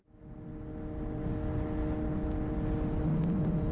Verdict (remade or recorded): recorded